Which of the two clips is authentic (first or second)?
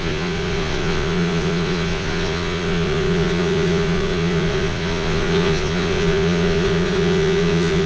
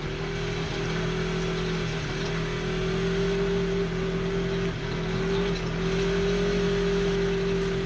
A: second